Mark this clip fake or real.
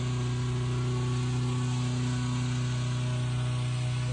real